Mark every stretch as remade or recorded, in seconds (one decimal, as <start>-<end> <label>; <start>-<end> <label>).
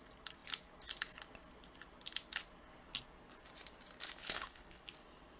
0.0-4.2 recorded; 4.2-4.8 remade; 4.8-5.4 recorded